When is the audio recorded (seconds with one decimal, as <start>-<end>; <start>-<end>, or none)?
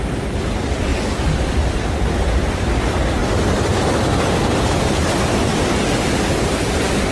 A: 0.9-1.7; 3.2-6.6